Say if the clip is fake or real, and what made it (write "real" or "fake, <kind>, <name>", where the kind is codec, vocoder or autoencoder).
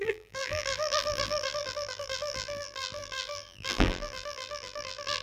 fake, vocoder, BigVGAN v2